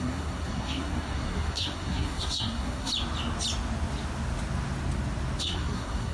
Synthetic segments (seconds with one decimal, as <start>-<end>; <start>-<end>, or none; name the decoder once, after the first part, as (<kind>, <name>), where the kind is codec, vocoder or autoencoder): 0.0-2.9 (codec, SNAC); 5.4-6.1